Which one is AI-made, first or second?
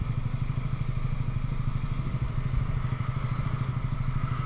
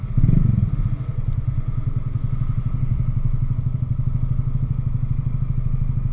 first